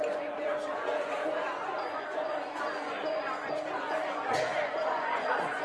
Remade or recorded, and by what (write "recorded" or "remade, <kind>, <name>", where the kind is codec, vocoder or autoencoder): remade, vocoder, Vocos